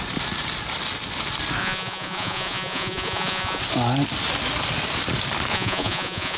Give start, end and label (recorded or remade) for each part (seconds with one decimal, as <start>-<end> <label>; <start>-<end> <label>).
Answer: 0.0-1.6 recorded; 1.6-3.6 remade; 3.6-5.5 recorded; 5.5-6.4 remade